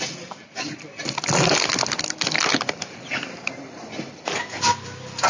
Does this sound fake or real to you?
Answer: real